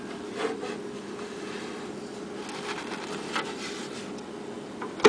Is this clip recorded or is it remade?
recorded